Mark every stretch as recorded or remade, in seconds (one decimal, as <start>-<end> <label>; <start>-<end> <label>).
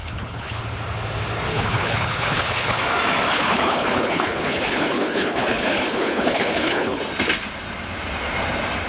0.0-0.6 remade; 0.6-1.5 recorded; 1.5-2.8 remade; 2.8-3.3 recorded; 3.3-7.0 remade; 7.0-8.9 recorded